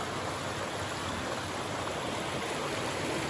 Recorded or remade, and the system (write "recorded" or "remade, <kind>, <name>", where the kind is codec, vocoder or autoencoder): recorded